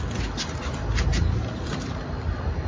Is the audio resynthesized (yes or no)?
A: no